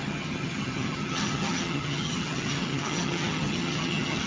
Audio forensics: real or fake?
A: fake